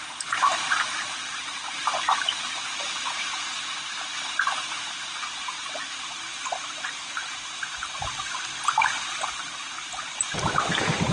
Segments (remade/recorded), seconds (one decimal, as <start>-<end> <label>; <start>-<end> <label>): 0.0-2.8 remade; 2.8-4.3 recorded; 4.3-11.1 remade